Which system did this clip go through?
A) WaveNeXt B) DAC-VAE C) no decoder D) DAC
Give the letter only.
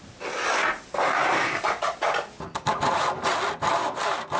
C